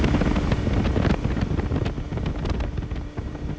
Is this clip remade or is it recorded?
recorded